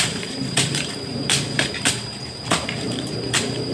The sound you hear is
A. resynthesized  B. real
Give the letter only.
A